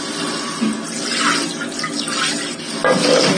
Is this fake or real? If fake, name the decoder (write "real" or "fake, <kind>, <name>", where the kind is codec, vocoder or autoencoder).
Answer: real